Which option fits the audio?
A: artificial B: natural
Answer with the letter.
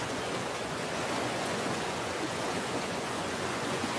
A